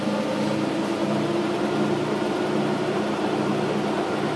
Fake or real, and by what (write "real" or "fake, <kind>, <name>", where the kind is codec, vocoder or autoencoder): real